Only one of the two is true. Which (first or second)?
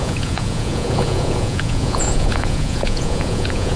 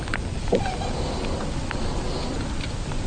second